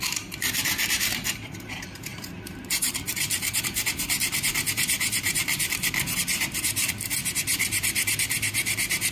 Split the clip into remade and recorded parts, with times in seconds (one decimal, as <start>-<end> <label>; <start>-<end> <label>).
0.0-9.1 remade